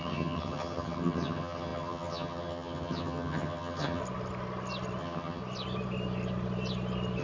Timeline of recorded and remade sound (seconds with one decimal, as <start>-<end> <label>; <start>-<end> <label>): 0.0-4.0 remade; 4.0-5.0 recorded; 5.0-5.4 remade; 5.4-7.2 recorded